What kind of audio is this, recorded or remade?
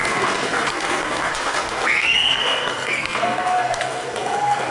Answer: remade